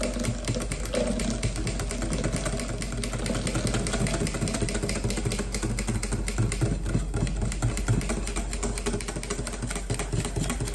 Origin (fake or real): real